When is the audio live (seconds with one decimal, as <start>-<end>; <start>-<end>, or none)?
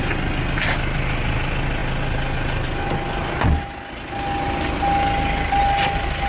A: 0.0-6.3